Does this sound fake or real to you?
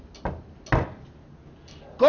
real